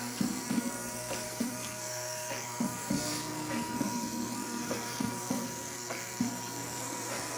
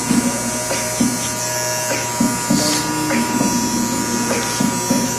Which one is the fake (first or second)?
first